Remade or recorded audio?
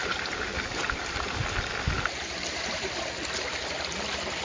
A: recorded